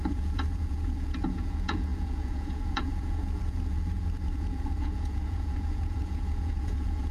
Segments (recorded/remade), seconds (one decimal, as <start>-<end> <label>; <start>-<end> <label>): 0.0-7.1 remade

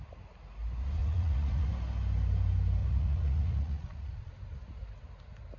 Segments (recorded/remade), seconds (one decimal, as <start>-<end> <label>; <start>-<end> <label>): 0.0-1.0 recorded; 1.0-1.7 remade; 1.7-2.8 recorded; 2.8-4.3 remade; 4.3-5.6 recorded

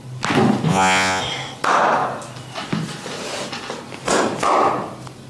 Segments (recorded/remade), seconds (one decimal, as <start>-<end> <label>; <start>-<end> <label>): 0.0-0.7 recorded; 0.7-1.2 remade; 1.2-5.3 recorded

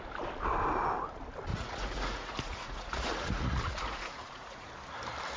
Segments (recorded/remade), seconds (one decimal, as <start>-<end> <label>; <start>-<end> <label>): 0.0-1.5 recorded; 1.5-4.7 remade; 4.7-5.4 recorded

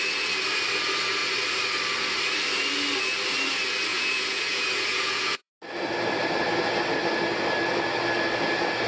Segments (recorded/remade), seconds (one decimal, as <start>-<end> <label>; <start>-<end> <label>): 0.0-3.9 recorded; 3.9-5.5 remade; 5.5-8.9 recorded

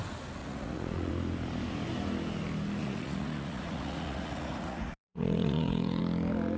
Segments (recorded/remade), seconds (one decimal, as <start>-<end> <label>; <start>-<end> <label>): 0.0-0.4 recorded; 0.4-1.1 remade; 1.1-2.8 recorded; 2.8-6.0 remade; 6.0-6.6 recorded

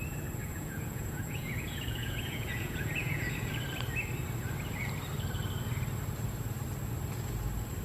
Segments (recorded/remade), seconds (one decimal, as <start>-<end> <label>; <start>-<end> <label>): 0.0-0.4 recorded; 0.4-3.5 remade; 3.5-7.8 recorded